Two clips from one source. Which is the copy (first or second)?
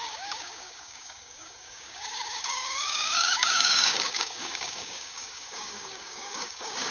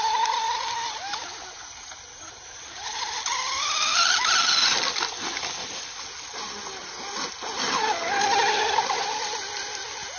first